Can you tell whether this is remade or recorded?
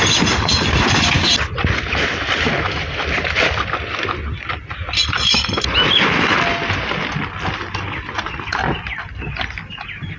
recorded